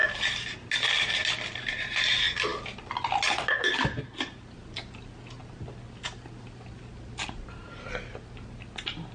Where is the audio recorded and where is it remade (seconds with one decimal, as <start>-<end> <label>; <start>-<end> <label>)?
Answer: 0.0-9.1 recorded